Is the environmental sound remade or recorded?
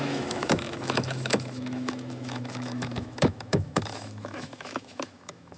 remade